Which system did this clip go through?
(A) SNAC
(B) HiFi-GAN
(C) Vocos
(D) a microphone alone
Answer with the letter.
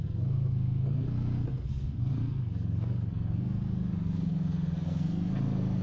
A